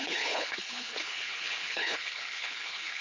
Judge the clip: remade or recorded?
remade